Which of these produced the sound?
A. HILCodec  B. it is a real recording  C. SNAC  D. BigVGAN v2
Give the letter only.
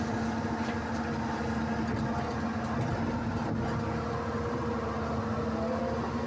B